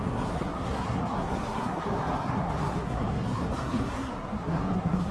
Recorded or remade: remade